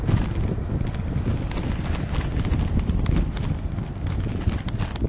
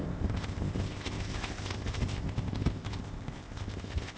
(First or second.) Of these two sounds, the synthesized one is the second